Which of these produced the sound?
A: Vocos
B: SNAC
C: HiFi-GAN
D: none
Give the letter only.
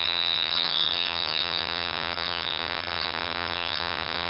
C